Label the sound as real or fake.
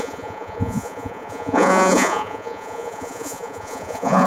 fake